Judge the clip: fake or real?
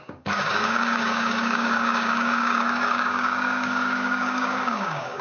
fake